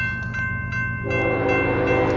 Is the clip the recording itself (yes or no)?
yes